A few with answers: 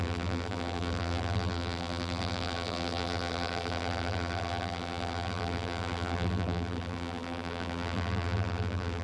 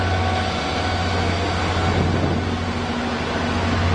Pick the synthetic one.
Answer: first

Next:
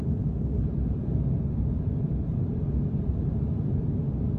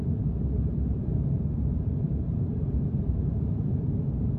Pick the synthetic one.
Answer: second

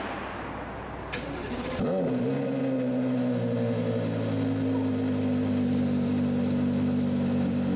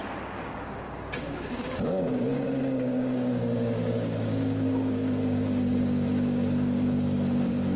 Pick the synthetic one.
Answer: second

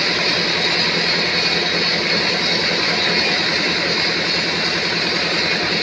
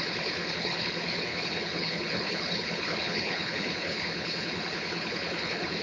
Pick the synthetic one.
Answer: second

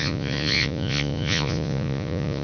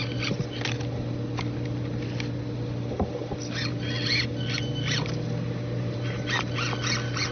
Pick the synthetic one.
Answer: first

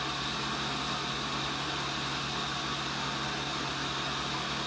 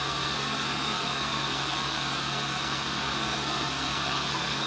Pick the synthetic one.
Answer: second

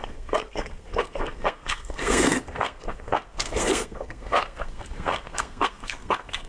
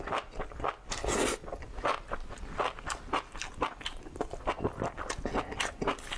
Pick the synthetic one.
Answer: first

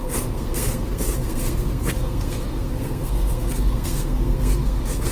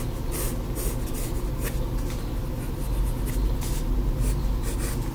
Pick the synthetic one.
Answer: first